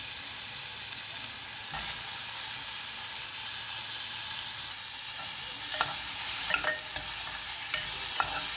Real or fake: real